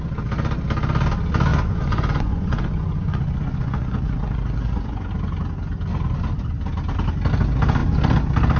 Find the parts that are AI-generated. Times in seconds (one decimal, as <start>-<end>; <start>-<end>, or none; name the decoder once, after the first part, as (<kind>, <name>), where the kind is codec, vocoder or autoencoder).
1.5-5.1 (vocoder, Vocos)